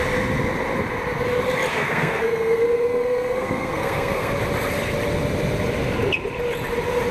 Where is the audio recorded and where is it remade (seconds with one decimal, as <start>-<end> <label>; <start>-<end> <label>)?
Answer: 0.0-1.7 recorded; 1.7-4.3 remade; 4.3-7.1 recorded